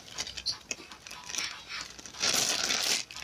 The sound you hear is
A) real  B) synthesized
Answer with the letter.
A